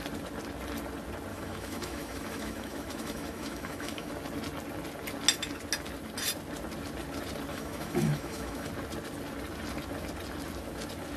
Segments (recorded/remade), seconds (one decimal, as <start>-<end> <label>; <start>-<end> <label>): 0.0-1.3 recorded; 1.3-4.1 remade; 4.1-7.5 recorded; 7.5-8.7 remade; 8.7-11.2 recorded